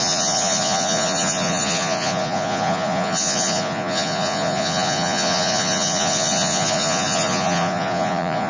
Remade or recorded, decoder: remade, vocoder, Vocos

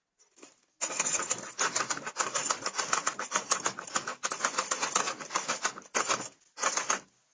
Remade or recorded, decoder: recorded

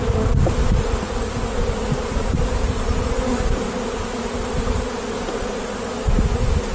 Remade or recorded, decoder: recorded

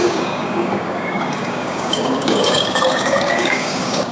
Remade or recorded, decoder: remade, codec, DAC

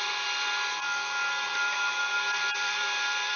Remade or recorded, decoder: remade, vocoder, BigVGAN v2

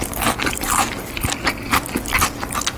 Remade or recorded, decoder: recorded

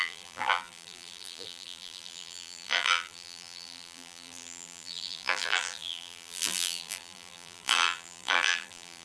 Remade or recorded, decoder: remade, vocoder, BigVGAN v2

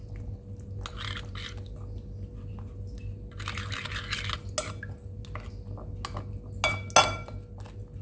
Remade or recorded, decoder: recorded